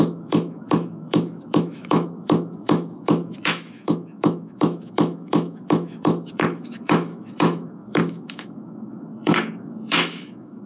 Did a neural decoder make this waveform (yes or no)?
yes